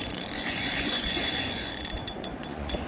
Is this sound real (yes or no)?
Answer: no